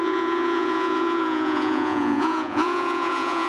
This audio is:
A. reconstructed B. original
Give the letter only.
A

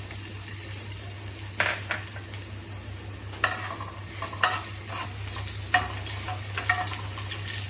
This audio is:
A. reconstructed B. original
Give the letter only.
B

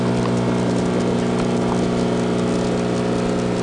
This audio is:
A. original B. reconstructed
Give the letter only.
A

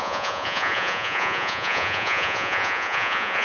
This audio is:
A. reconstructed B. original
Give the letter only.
A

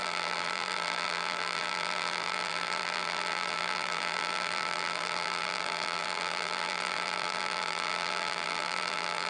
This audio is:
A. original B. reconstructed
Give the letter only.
B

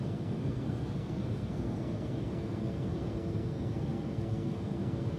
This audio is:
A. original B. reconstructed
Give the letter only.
B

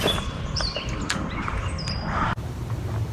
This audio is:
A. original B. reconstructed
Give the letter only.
A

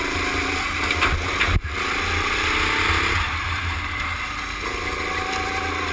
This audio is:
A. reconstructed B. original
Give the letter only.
B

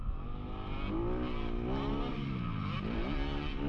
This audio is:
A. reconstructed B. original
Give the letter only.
B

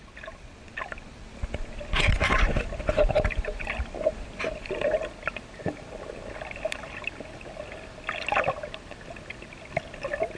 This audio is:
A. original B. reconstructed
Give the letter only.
A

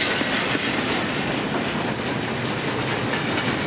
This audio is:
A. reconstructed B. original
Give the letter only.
B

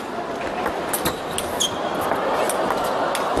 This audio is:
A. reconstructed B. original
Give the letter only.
B